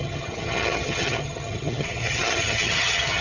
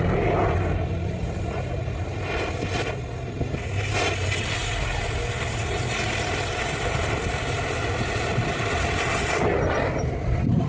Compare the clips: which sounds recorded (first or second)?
second